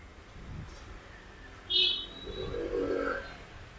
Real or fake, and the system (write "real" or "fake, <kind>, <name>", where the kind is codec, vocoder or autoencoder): real